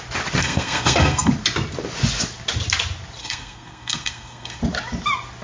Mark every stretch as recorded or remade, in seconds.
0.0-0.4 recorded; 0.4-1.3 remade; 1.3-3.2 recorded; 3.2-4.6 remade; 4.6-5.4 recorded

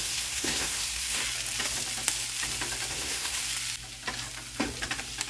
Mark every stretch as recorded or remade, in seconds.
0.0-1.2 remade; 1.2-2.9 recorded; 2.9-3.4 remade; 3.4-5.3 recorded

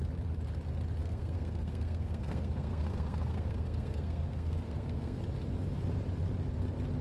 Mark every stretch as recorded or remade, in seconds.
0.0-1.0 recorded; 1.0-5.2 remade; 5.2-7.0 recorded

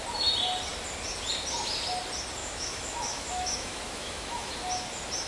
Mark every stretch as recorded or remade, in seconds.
0.0-2.4 recorded; 2.4-4.5 remade; 4.5-5.3 recorded

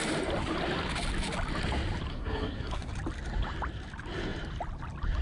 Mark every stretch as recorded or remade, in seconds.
0.0-2.1 recorded; 2.1-2.9 remade; 2.9-5.2 recorded

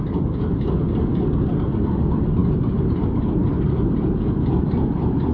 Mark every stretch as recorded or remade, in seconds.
0.0-5.3 recorded